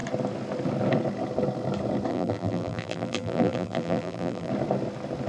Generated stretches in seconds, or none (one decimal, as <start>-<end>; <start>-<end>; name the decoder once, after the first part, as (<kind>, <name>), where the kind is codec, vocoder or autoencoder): 2.1-4.5 (vocoder, BigVGAN v2)